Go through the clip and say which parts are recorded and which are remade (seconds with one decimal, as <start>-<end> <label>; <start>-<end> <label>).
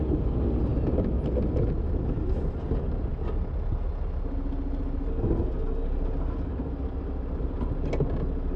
0.0-8.6 recorded